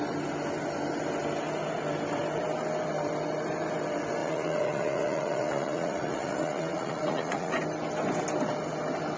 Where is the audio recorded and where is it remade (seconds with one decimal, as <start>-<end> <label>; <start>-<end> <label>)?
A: 0.0-4.2 recorded; 4.2-7.5 remade; 7.5-9.2 recorded